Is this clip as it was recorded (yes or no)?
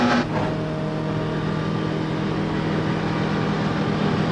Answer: yes